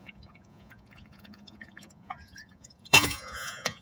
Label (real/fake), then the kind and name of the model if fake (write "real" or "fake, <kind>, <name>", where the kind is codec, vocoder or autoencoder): fake, vocoder, Vocos